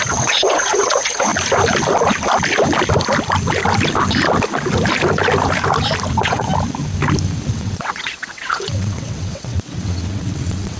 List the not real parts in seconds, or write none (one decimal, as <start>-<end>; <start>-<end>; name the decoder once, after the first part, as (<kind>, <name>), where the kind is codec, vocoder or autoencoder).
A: 0.0-1.3 (vocoder, WaveNeXt); 6.1-6.5; 7.5-10.8